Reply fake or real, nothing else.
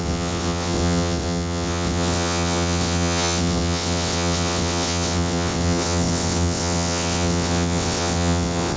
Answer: fake